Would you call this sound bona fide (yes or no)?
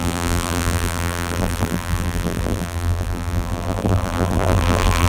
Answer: no